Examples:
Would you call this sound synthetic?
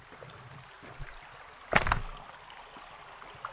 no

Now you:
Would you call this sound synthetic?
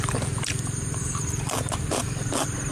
no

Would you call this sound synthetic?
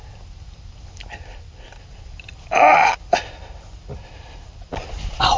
no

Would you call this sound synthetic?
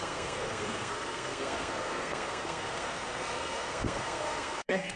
yes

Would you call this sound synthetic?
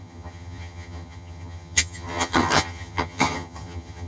yes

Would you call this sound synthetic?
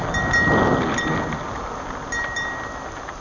no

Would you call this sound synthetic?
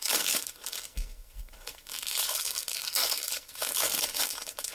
yes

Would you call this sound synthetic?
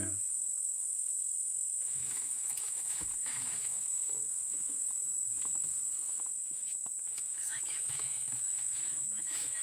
yes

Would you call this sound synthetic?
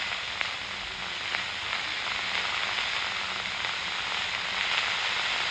no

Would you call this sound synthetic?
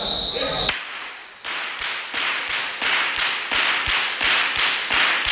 no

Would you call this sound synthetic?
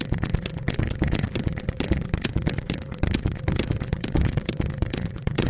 yes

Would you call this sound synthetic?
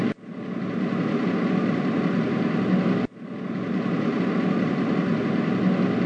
no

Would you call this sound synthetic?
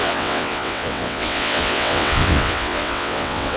yes